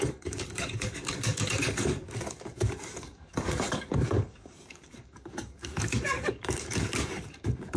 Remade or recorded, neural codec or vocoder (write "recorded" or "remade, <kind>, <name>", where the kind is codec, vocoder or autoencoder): remade, codec, DAC